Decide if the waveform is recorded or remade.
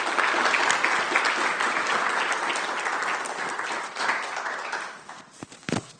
recorded